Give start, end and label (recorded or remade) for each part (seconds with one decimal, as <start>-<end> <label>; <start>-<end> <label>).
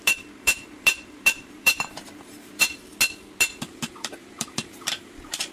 0.0-2.9 remade; 2.9-3.6 recorded; 3.6-5.5 remade